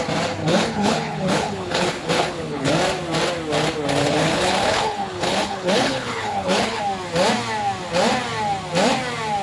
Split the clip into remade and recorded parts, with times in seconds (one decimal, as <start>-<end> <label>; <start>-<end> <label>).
0.0-0.4 recorded; 0.4-2.7 remade; 2.7-4.0 recorded; 4.0-6.8 remade; 6.8-9.4 recorded